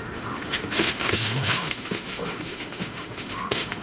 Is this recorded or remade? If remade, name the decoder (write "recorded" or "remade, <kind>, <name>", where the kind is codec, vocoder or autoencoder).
remade, autoencoder, DAC-VAE